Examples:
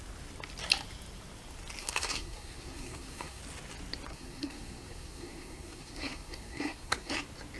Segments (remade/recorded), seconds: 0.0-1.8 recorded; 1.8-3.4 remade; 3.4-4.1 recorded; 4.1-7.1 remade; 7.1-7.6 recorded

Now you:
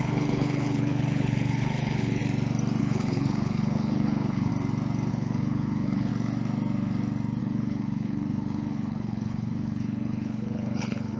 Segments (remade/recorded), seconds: 0.0-2.2 remade; 2.2-2.8 recorded; 2.8-4.5 remade; 4.5-5.1 recorded; 5.1-6.1 remade; 6.1-7.4 recorded; 7.4-11.2 remade

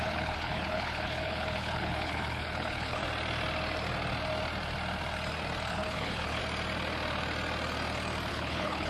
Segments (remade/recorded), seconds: 0.0-3.0 remade; 3.0-5.7 recorded; 5.7-6.4 remade; 6.4-8.3 recorded; 8.3-8.9 remade

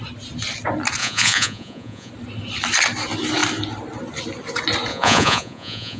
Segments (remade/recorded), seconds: 0.0-1.0 recorded; 1.0-2.1 remade; 2.1-4.9 recorded; 4.9-6.0 remade

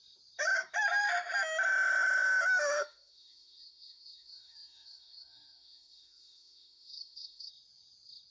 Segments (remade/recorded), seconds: 0.0-2.5 recorded; 2.5-7.5 remade; 7.5-8.3 recorded